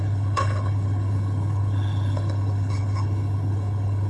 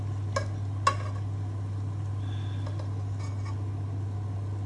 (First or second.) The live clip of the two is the second